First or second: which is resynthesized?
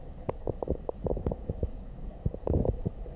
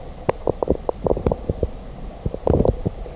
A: first